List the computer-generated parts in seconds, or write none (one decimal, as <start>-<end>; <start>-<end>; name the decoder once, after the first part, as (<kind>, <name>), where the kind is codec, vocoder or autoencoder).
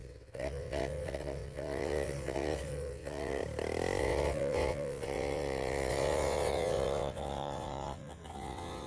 0.0-3.4 (vocoder, WaveNeXt); 4.0-8.9